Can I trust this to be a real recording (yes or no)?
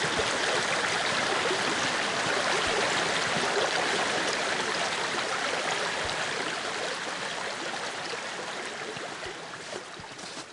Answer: yes